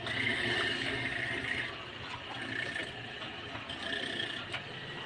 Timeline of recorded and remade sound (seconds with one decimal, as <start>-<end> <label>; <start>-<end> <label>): 0.0-0.7 recorded; 0.7-1.3 remade; 1.3-5.1 recorded